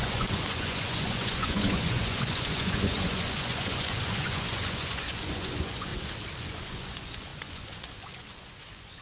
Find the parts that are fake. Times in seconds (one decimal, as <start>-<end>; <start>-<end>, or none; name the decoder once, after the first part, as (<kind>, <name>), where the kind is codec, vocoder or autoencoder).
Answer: 0.0-5.9 (vocoder, Vocos); 6.4-9.0